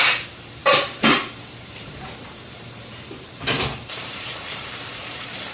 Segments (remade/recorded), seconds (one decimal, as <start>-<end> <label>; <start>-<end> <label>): 0.0-5.5 remade